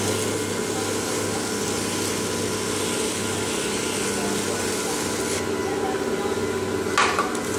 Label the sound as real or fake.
real